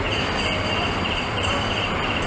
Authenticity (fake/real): real